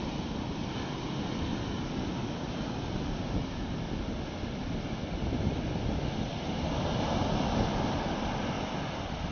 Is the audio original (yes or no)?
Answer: yes